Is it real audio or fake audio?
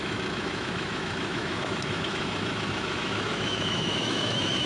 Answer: fake